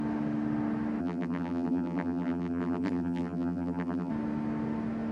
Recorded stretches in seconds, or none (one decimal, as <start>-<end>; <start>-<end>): 0.0-1.0; 4.1-5.1